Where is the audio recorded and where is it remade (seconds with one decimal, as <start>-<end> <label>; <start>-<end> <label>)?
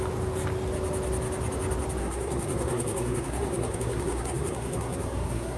0.0-2.0 recorded; 2.0-5.6 remade